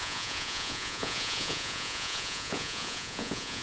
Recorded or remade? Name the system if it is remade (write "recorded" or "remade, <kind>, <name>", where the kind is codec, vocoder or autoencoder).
remade, vocoder, Vocos